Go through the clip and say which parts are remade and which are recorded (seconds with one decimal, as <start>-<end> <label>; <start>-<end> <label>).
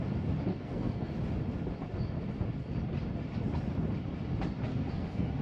0.0-0.5 recorded; 0.5-1.1 remade; 1.1-4.7 recorded; 4.7-5.4 remade